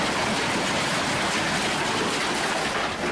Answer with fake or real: real